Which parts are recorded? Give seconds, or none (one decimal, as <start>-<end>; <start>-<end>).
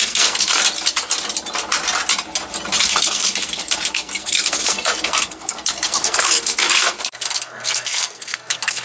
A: 0.6-2.8